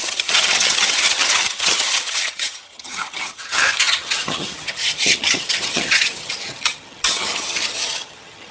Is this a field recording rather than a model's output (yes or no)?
no